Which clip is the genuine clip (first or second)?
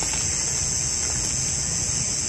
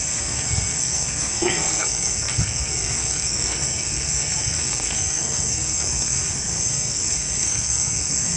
first